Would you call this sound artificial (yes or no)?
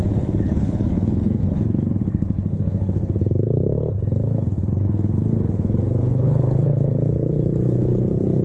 yes